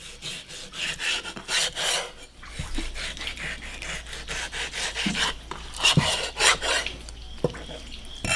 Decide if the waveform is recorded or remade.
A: recorded